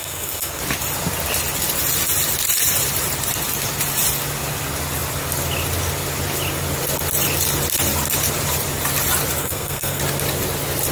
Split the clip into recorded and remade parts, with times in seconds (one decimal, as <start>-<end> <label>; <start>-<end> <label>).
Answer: 0.0-0.6 remade; 0.6-9.4 recorded; 9.4-10.0 remade; 10.0-10.9 recorded